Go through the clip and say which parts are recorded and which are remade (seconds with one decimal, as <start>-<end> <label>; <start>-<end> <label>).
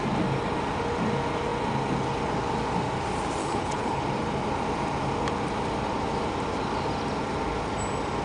0.0-3.4 recorded; 3.4-4.0 remade; 4.0-8.2 recorded